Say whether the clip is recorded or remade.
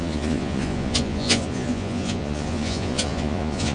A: remade